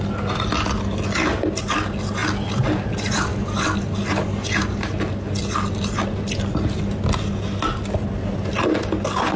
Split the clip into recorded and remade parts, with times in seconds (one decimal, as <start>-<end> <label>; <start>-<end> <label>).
0.0-2.2 recorded; 2.2-2.9 remade; 2.9-9.4 recorded